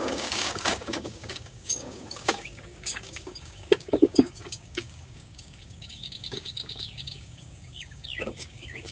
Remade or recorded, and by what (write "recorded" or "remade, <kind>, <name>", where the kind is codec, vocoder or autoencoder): remade, codec, DAC